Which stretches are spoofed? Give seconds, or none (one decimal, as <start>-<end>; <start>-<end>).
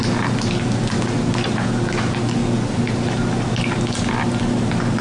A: none